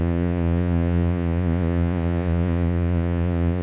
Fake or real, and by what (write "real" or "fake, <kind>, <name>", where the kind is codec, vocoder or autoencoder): fake, vocoder, Vocos